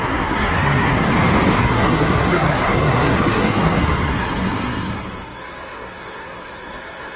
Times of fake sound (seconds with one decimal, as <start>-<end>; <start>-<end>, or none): 0.0-1.1; 1.6-7.2